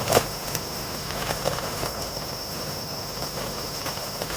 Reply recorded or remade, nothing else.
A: remade